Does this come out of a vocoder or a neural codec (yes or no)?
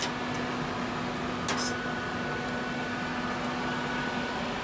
no